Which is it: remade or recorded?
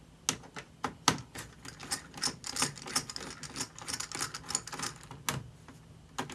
recorded